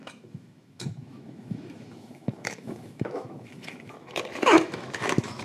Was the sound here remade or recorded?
remade